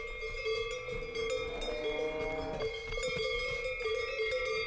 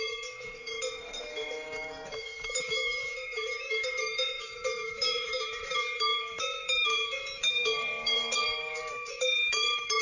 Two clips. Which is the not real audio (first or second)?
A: second